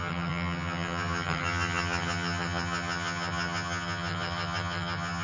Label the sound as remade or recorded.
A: remade